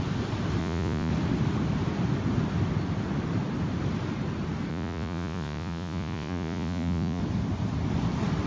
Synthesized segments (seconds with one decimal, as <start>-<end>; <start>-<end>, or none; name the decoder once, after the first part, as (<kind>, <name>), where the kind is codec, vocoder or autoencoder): 0.6-1.1 (vocoder, Vocos); 4.7-7.2